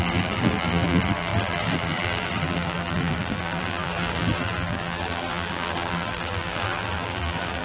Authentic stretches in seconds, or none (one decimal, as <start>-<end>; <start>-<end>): none